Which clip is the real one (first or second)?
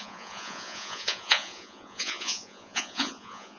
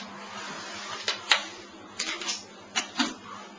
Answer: second